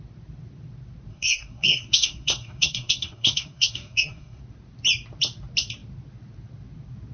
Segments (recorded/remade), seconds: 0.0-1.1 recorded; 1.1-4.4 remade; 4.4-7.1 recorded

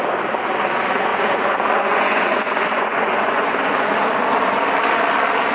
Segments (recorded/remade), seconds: 0.0-1.1 recorded; 1.1-3.9 remade; 3.9-5.5 recorded

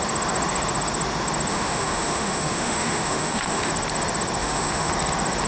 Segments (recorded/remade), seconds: 0.0-1.5 recorded; 1.5-3.7 remade; 3.7-4.4 recorded; 4.4-4.9 remade; 4.9-5.5 recorded

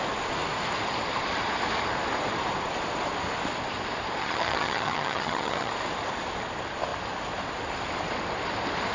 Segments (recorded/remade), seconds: 0.0-4.2 recorded; 4.2-5.7 remade; 5.7-8.9 recorded

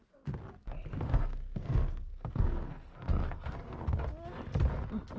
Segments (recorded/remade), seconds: 0.0-0.9 recorded; 0.9-4.0 remade; 4.0-5.2 recorded